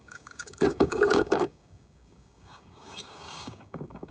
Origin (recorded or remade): remade